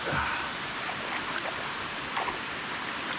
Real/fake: fake